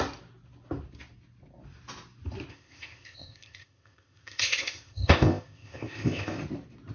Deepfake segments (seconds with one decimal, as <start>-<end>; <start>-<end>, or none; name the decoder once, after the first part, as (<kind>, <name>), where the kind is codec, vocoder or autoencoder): 2.5-6.4 (codec, ZipCodec)